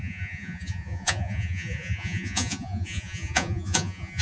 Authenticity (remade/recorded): remade